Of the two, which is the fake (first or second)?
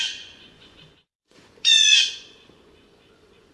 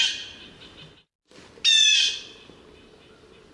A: first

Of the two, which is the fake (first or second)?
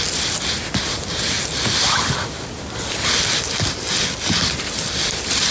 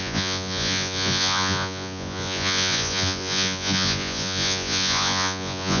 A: second